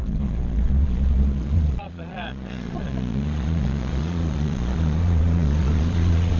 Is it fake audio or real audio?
fake